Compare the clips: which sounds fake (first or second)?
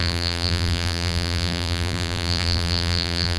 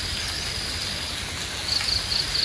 first